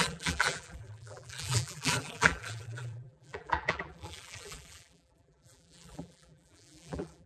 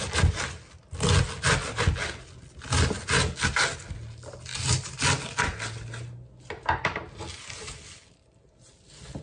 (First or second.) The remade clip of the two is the first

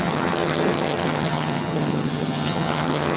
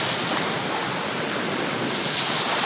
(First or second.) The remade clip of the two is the first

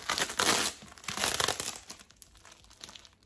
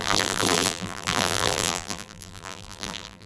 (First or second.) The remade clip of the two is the second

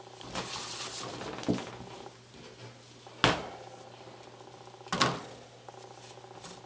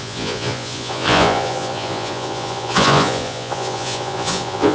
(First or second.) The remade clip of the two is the second